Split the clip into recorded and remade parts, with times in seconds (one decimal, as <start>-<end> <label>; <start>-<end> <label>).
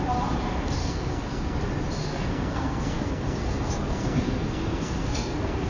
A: 0.0-0.8 recorded; 0.8-1.6 remade; 1.6-2.0 recorded; 2.0-5.7 remade